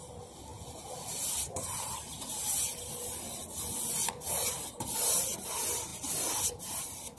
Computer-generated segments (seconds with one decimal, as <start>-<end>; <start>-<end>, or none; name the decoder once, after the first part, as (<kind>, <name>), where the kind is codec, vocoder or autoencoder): none